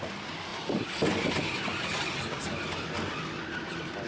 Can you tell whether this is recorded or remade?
recorded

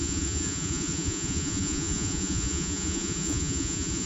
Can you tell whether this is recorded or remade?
remade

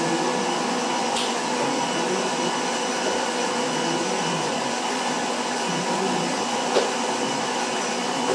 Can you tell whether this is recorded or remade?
remade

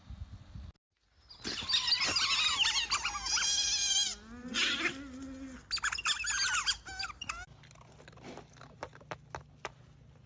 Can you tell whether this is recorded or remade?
recorded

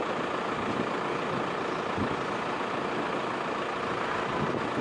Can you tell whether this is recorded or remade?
recorded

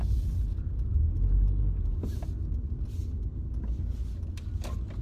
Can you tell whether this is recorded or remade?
recorded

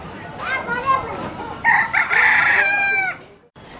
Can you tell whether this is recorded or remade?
remade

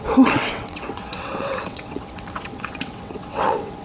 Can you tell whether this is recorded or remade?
remade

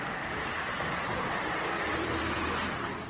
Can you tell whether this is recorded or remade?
recorded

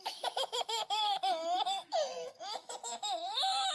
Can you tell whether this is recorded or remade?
remade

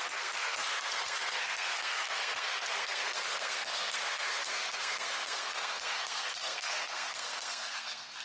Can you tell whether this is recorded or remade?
remade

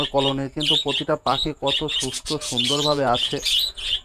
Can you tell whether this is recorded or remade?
remade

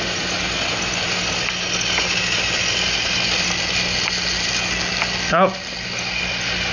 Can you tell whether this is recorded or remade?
recorded